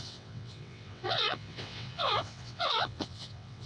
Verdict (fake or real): fake